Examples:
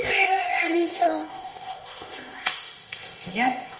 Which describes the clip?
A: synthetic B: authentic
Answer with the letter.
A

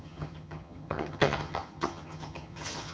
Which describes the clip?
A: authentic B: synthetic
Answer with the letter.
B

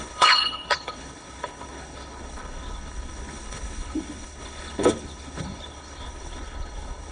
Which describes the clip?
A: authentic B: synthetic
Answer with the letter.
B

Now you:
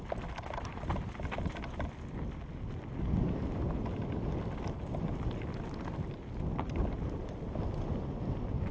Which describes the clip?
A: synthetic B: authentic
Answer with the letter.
B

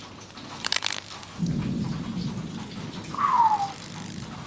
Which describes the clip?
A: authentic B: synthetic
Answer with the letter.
A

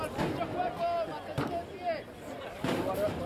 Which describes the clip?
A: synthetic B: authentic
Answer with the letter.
B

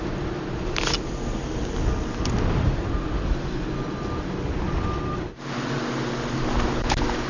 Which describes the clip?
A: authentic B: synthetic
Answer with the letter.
A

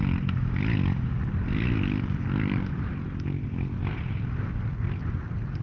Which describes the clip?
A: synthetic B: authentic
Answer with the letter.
B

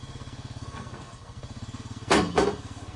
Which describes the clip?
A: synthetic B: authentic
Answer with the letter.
A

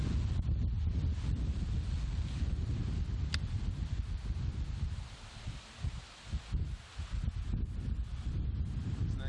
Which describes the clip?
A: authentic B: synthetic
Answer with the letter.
A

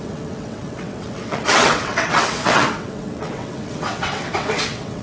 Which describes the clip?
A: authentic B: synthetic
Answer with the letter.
B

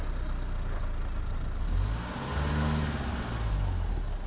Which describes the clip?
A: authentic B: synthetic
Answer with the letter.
A